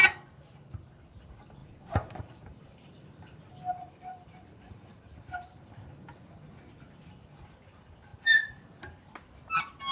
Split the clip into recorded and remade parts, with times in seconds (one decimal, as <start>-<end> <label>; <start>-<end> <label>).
0.0-1.6 recorded; 1.6-5.7 remade; 5.7-8.1 recorded; 8.1-8.8 remade; 8.8-9.9 recorded